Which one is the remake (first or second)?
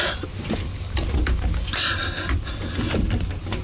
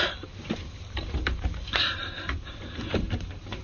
second